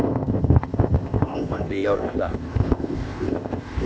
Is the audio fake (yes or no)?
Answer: yes